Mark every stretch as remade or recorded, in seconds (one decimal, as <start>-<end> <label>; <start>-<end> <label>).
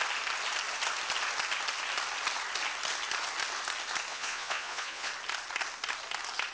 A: 0.0-4.1 recorded; 4.1-5.1 remade; 5.1-6.5 recorded